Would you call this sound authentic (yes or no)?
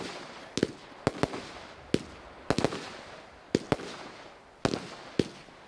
yes